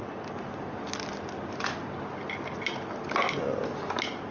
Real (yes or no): yes